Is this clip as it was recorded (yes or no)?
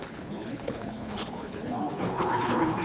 no